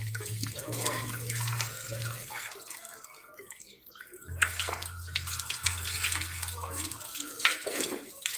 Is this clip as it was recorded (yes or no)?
no